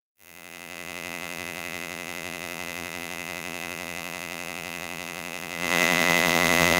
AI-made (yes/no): yes